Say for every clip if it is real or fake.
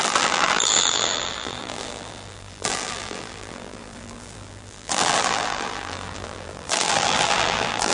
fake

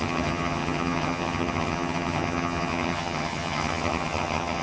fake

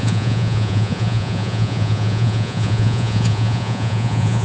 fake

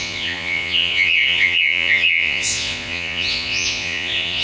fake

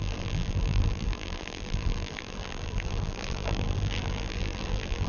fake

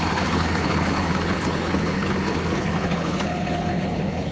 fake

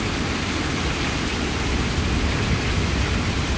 real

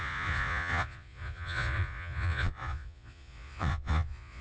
fake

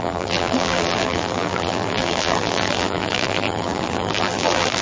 fake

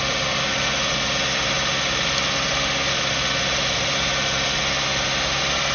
real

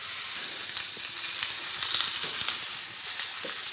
real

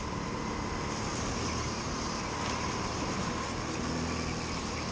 real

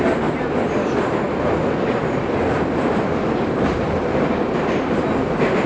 real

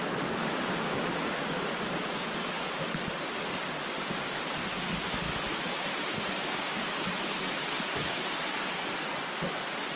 real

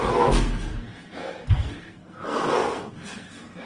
fake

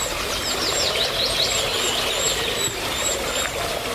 real